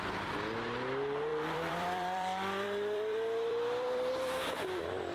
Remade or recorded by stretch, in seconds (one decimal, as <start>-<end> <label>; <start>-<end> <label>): 0.0-1.3 recorded; 1.3-4.4 remade; 4.4-5.1 recorded